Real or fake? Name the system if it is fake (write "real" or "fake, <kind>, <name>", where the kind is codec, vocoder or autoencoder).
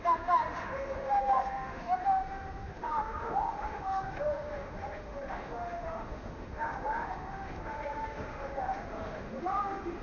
fake, autoencoder, DAC-VAE